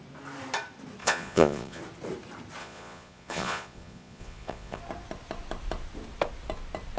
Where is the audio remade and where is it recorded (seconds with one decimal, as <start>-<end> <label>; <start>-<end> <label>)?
0.0-1.0 recorded; 1.0-1.8 remade; 1.8-2.6 recorded; 2.6-4.8 remade; 4.8-7.0 recorded